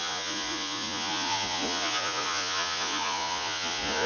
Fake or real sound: fake